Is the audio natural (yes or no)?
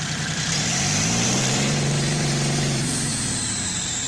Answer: no